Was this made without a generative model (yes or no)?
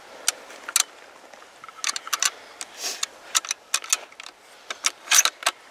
yes